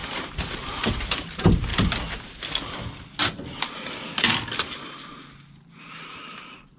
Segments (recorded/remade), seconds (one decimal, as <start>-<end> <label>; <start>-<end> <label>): 0.0-0.9 recorded; 0.9-1.7 remade; 1.7-5.8 recorded; 5.8-6.8 remade